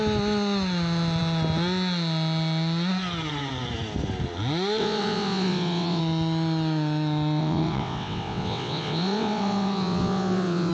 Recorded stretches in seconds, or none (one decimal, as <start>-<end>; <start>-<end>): 0.0-4.8; 6.0-7.4